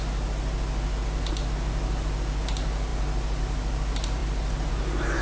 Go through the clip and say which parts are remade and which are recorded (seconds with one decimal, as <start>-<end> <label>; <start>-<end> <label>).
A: 0.0-5.2 recorded